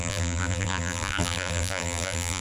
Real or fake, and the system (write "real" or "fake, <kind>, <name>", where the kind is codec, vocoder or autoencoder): fake, vocoder, BigVGAN v2